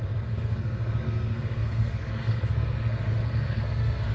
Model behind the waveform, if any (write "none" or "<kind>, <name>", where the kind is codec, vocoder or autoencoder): codec, SNAC